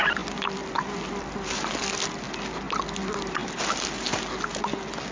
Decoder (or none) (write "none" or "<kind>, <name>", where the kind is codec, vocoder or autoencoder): none